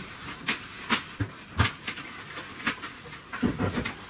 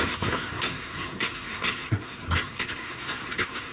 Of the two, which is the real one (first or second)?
first